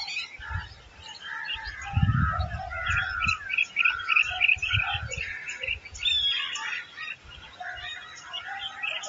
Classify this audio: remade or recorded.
recorded